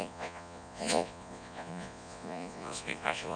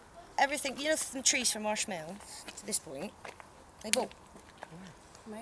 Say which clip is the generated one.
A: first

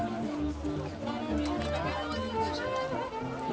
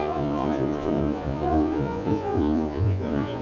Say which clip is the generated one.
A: second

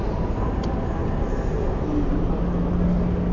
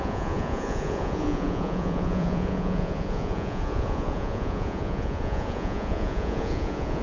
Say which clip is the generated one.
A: second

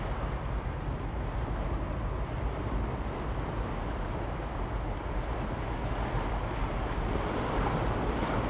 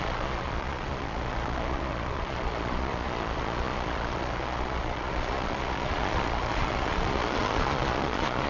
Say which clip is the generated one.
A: second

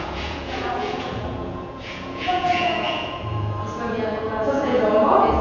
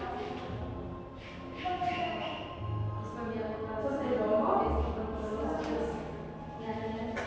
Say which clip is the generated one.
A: first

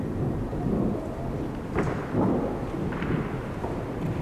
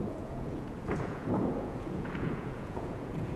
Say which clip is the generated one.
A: second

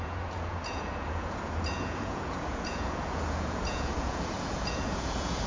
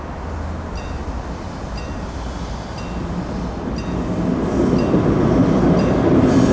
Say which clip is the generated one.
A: first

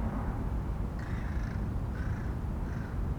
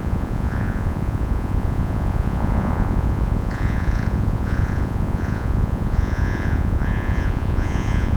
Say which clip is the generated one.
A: second